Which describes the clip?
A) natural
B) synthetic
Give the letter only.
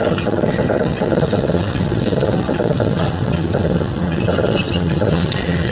B